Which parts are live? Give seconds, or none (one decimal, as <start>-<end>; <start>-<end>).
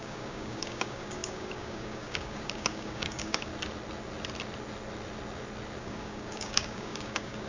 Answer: 3.5-5.8